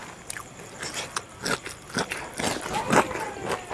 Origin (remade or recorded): recorded